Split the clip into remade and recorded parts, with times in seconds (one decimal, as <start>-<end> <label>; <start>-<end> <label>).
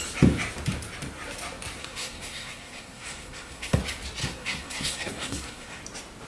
0.0-1.8 recorded; 1.8-3.8 remade; 3.8-4.2 recorded; 4.2-5.8 remade; 5.8-6.3 recorded